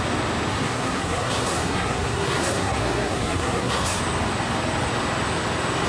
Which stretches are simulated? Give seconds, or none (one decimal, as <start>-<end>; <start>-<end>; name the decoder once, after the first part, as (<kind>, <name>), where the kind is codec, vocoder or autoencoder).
0.5-4.0 (codec, SNAC)